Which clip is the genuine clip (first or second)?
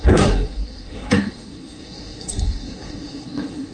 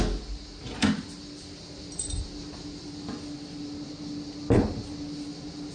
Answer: second